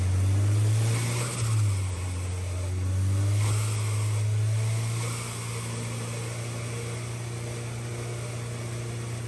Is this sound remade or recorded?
recorded